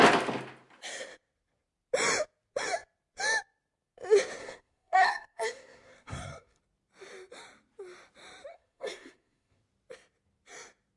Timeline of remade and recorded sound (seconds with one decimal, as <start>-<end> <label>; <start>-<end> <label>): 0.0-4.4 recorded; 4.4-6.6 remade; 6.6-8.5 recorded; 8.5-9.6 remade; 9.6-11.0 recorded